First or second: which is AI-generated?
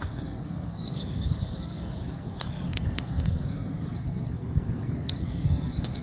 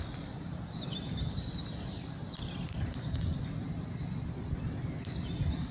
first